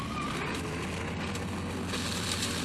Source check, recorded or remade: recorded